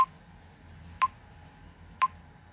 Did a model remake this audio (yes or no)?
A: no